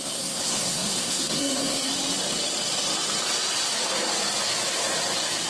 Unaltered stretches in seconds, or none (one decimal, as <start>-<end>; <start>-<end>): 1.9-5.5